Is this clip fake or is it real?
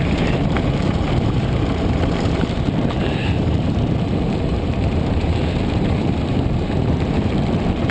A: fake